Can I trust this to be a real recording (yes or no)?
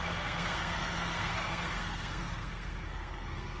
no